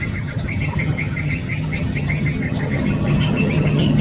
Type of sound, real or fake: fake